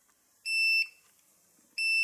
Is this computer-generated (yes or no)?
no